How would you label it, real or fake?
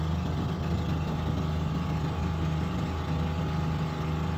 real